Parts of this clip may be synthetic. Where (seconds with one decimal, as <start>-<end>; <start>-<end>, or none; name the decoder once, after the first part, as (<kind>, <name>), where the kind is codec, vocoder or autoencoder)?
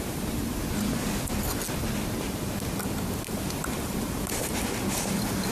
0.0-0.6 (vocoder, BigVGAN v2); 3.3-5.5